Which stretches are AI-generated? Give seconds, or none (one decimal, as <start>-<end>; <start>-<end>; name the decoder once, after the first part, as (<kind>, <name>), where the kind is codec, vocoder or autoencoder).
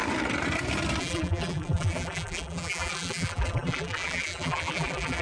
1.0-5.2 (vocoder, BigVGAN v2)